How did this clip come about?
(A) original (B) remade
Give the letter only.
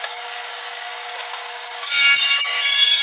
B